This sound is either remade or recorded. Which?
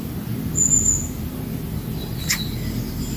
recorded